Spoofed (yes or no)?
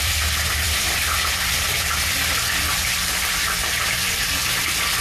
yes